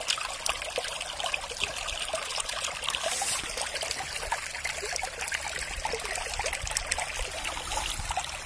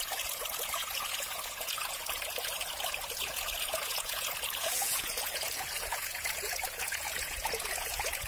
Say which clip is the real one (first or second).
first